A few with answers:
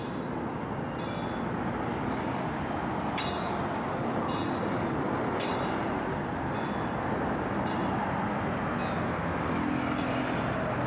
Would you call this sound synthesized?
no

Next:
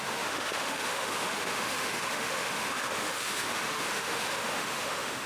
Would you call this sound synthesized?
yes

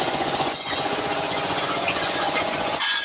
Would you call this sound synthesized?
yes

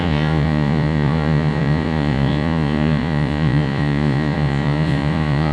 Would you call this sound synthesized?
yes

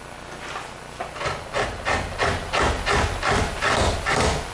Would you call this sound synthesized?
no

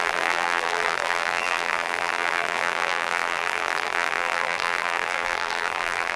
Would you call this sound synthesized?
yes